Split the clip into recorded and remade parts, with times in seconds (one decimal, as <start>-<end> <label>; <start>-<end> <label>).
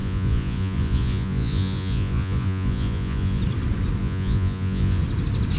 0.0-3.4 remade; 3.4-4.0 recorded; 4.0-5.0 remade; 5.0-5.6 recorded